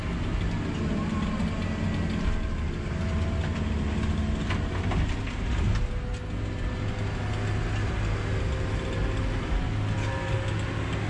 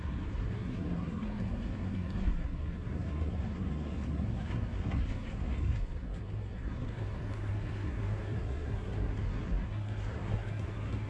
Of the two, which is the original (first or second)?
first